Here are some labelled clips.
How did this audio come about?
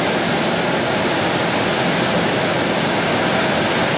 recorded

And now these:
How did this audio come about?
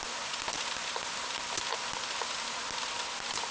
recorded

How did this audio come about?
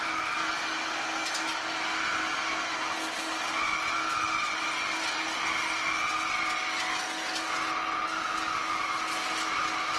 recorded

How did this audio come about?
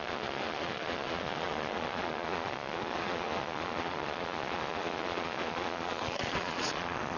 remade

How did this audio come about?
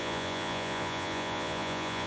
remade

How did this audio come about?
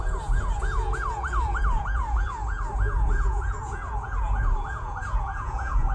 remade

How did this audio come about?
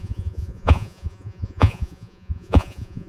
remade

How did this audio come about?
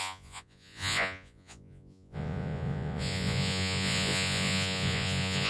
remade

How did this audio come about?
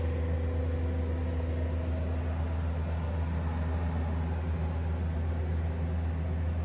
recorded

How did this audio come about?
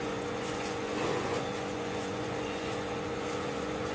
remade